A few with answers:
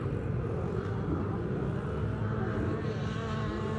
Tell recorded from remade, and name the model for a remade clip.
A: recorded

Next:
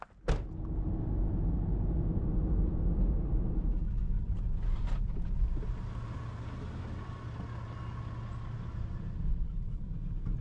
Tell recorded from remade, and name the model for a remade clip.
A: recorded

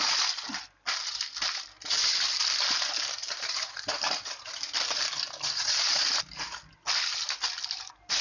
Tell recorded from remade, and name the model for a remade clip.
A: recorded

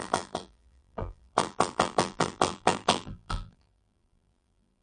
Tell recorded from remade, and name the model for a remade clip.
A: remade, vocoder, BigVGAN v2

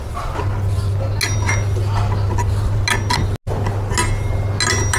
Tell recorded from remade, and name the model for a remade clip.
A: recorded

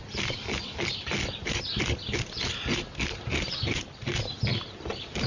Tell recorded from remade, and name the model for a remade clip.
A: recorded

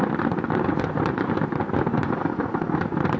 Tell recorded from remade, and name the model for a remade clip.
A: recorded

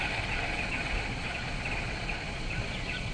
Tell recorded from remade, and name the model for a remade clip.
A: remade, vocoder, Vocos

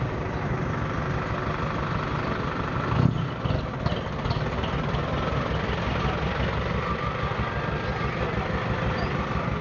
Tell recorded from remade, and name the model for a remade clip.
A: recorded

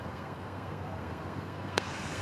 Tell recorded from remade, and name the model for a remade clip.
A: remade, codec, SNAC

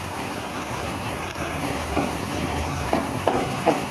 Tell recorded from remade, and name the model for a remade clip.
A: remade, codec, SNAC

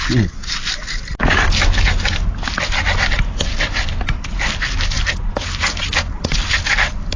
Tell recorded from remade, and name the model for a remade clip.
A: recorded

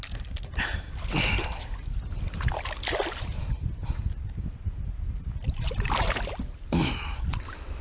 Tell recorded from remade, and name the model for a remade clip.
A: recorded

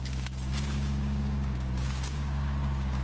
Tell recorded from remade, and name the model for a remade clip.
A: remade, codec, DAC